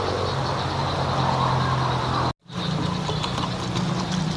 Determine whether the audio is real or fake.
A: real